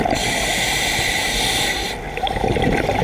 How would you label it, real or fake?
real